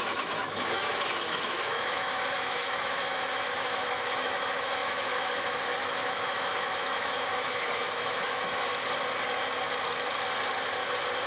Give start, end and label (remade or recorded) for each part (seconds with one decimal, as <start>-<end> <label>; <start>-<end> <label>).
0.0-8.7 remade; 8.7-11.3 recorded